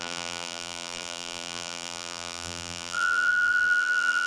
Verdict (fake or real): fake